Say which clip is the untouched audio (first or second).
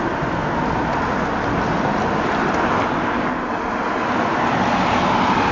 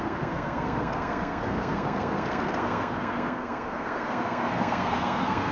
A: first